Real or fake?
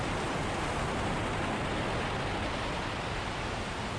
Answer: real